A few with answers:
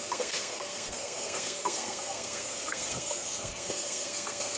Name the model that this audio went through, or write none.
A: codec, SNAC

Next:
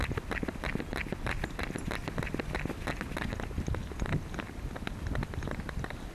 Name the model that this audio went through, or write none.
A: none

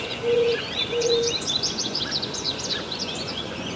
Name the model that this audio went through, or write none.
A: vocoder, Vocos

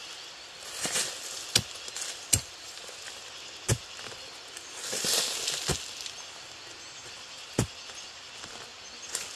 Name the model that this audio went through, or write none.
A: none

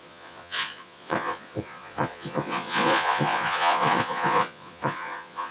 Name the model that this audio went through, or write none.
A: vocoder, Vocos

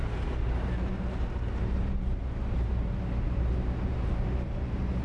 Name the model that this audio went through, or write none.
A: vocoder, BigVGAN v2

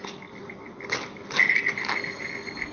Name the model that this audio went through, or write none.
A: none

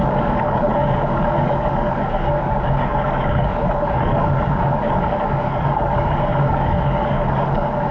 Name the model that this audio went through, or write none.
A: codec, DAC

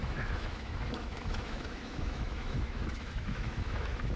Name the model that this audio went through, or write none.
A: autoencoder, DAC-VAE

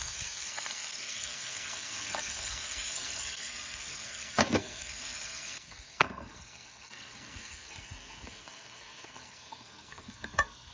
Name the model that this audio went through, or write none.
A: codec, SNAC